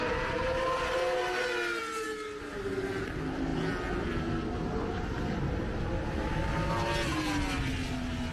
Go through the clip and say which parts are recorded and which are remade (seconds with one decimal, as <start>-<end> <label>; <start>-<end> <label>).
0.0-8.3 recorded